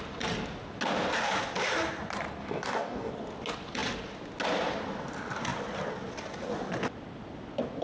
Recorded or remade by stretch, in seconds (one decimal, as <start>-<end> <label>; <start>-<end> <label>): 0.0-2.4 recorded; 2.4-3.1 remade; 3.1-7.8 recorded